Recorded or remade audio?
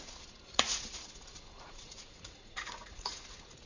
remade